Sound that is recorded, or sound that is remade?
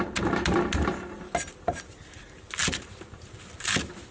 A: recorded